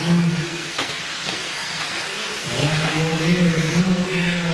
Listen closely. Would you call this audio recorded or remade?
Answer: remade